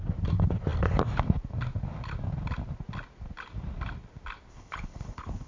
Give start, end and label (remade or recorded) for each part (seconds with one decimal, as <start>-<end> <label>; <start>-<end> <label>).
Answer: 0.0-4.5 recorded; 4.5-5.5 remade